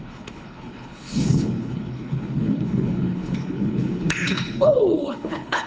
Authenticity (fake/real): fake